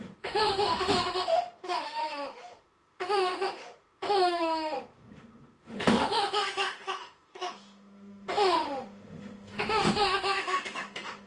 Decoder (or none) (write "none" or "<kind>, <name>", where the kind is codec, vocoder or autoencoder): autoencoder, DAC-VAE